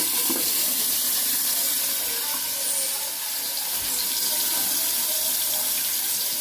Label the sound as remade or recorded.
recorded